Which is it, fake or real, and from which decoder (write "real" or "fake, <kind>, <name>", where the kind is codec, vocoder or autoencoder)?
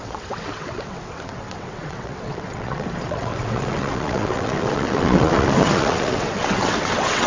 fake, vocoder, WaveNeXt